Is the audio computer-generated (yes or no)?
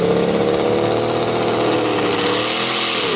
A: no